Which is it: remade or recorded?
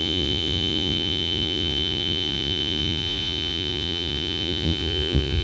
remade